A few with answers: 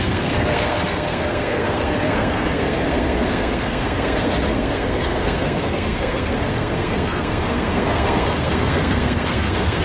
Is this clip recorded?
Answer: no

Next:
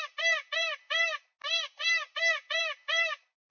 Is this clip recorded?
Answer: yes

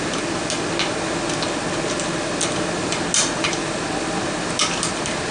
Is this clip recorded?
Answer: yes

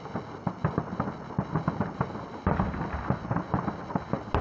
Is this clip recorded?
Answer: yes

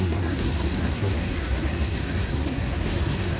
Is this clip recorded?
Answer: no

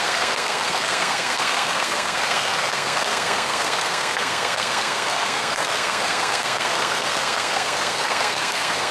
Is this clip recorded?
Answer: no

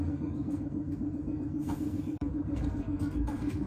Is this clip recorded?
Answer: no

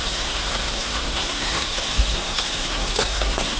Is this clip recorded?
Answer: no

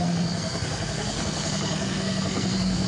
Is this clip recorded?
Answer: no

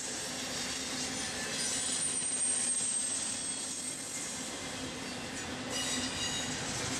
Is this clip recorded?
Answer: yes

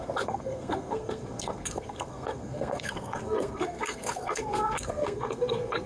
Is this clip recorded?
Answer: no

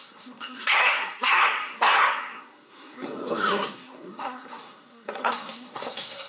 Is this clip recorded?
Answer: no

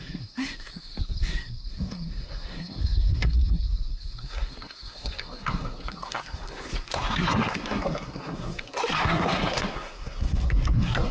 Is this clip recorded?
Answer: no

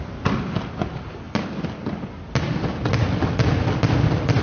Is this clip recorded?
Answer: yes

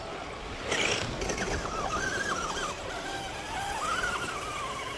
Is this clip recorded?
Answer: yes